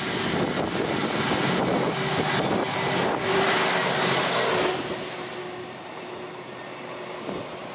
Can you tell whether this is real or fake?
real